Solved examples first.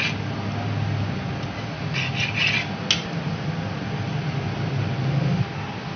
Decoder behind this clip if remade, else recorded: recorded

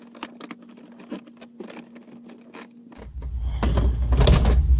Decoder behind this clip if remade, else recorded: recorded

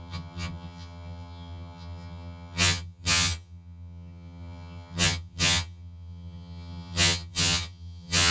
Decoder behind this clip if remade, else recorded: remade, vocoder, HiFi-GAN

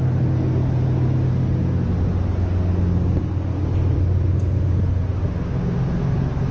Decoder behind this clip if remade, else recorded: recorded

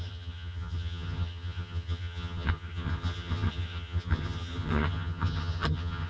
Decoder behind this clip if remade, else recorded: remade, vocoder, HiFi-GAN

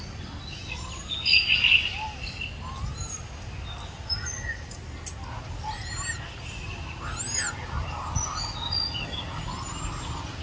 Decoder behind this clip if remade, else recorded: recorded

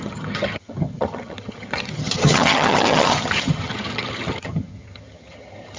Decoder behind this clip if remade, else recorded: remade, vocoder, HiFi-GAN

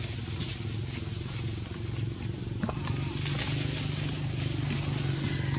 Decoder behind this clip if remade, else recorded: recorded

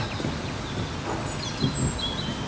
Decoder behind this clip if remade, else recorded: recorded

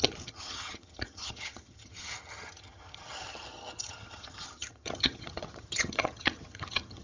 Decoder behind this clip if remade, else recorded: remade, vocoder, HiFi-GAN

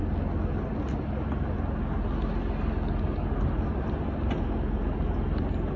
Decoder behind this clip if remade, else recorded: recorded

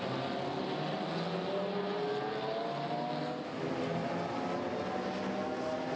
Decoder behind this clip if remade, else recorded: recorded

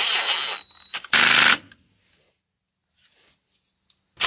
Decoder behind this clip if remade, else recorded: recorded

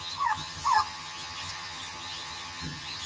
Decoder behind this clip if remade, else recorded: remade, vocoder, HiFi-GAN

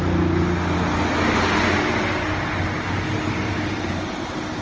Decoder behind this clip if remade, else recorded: recorded